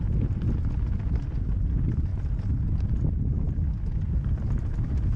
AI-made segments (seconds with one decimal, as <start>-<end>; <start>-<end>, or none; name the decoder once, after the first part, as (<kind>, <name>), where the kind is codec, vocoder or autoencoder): none